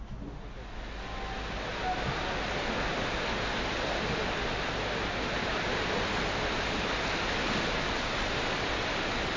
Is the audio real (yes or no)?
yes